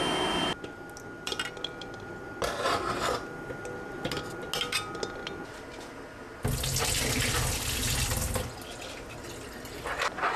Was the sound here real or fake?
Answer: real